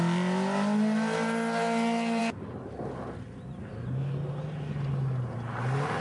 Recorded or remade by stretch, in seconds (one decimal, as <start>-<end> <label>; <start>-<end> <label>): 0.0-6.0 recorded